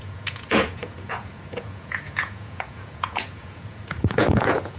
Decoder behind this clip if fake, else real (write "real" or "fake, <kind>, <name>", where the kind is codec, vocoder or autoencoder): fake, vocoder, Vocos